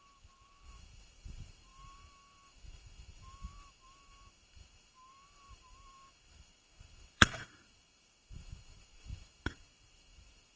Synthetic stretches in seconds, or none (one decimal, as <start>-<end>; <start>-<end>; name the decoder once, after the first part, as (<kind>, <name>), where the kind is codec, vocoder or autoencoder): 0.0-10.6 (autoencoder, DAC-VAE)